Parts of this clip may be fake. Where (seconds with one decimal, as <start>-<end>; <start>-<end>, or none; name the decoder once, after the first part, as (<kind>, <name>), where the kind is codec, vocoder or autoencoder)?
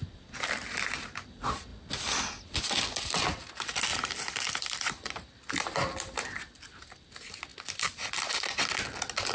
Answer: none